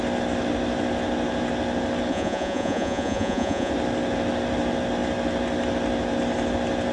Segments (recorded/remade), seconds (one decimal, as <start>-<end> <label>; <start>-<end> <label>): 0.0-2.1 recorded; 2.1-3.7 remade; 3.7-6.9 recorded